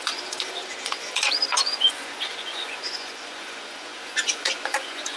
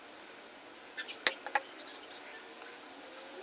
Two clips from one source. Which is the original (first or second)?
second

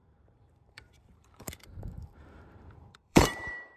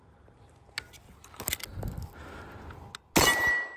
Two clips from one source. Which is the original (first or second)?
second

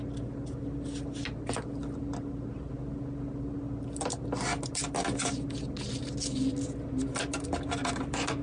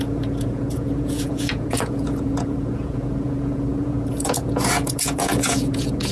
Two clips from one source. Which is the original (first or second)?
first